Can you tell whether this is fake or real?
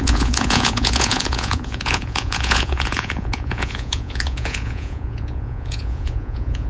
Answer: fake